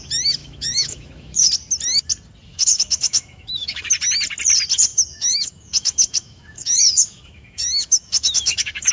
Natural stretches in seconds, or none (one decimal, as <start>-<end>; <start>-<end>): 0.0-0.4; 1.5-2.5; 3.9-4.9